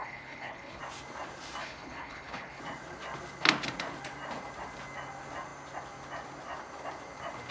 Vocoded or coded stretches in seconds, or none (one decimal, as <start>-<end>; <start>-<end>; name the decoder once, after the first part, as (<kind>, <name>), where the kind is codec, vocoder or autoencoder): 0.0-0.8 (codec, HILCodec); 1.6-2.6